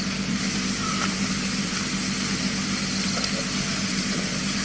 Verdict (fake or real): real